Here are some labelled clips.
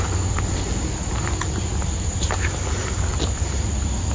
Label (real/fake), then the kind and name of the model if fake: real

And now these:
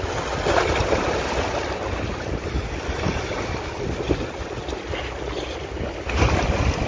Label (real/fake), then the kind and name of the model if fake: real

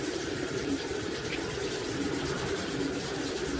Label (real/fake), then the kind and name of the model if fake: fake, vocoder, BigVGAN v2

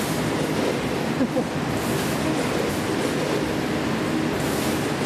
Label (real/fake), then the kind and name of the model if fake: real